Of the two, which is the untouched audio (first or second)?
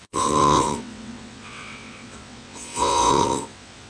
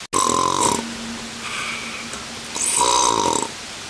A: second